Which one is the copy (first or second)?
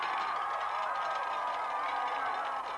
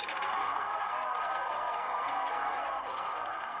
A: second